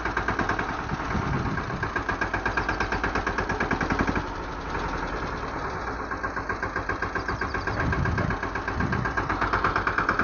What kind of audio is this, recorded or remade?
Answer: recorded